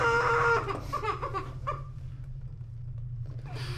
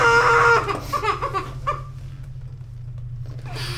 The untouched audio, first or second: second